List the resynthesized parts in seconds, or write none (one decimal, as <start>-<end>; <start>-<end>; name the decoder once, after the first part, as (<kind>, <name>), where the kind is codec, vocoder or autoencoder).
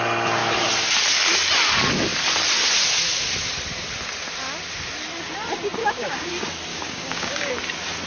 5.8-6.3 (codec, DAC); 6.7-7.5